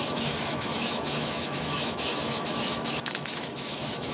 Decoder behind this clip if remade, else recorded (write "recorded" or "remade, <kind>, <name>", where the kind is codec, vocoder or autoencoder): remade, autoencoder, DAC-VAE